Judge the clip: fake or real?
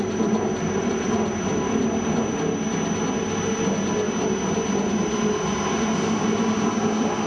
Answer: real